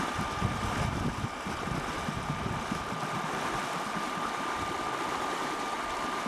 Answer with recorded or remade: recorded